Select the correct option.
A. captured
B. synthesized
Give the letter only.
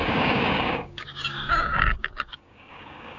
B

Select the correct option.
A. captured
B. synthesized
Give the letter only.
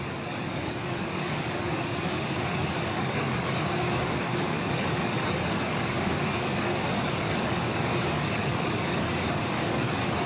B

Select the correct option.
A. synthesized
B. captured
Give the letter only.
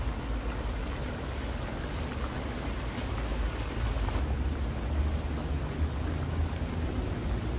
B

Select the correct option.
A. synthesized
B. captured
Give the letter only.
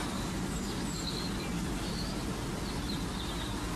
B